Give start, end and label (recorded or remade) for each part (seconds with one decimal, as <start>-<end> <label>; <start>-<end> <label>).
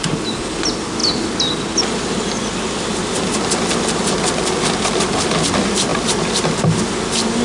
0.0-7.4 recorded